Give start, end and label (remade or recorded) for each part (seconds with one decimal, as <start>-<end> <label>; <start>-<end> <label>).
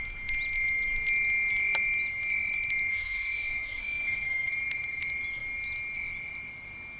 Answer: 0.0-2.9 recorded; 2.9-4.5 remade; 4.5-7.0 recorded